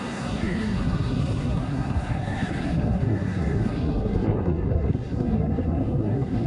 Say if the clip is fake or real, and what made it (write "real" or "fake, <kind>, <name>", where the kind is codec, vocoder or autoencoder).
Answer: fake, codec, SNAC